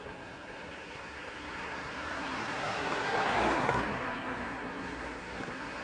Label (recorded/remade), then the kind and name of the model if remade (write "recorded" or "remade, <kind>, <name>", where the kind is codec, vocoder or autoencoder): remade, codec, SNAC